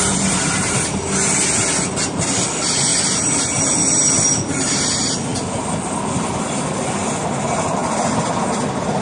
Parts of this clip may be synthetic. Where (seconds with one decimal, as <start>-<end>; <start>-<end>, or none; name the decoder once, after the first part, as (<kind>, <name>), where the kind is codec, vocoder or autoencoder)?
none

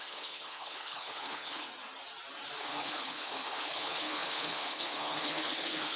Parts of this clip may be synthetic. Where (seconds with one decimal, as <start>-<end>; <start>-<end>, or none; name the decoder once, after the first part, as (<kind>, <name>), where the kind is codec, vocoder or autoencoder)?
0.0-1.7 (codec, HILCodec); 2.6-6.0

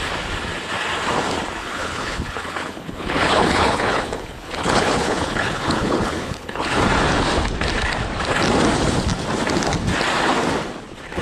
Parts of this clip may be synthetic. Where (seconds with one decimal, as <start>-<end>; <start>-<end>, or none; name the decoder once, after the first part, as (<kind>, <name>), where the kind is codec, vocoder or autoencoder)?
1.6-6.8 (codec, HILCodec)

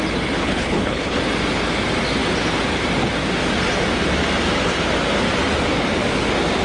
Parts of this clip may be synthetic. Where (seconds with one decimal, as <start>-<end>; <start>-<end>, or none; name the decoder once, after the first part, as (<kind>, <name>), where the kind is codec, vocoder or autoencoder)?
0.4-1.2 (codec, HILCodec)

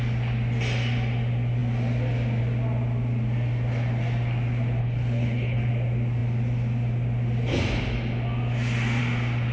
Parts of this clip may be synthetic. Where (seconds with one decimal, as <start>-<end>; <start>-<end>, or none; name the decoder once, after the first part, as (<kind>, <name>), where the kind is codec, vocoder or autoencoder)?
4.8-5.7 (codec, HILCodec)

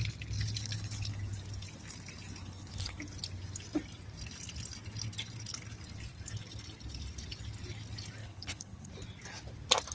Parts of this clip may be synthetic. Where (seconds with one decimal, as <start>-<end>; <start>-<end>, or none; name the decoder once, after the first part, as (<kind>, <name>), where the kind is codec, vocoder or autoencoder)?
0.6-1.2 (codec, HILCodec); 2.4-3.0; 8.2-8.9

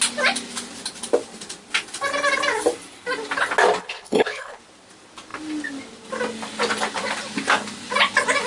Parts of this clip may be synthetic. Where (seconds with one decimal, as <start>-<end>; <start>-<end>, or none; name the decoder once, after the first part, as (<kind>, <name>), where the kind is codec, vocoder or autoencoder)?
3.8-4.6 (codec, HILCodec)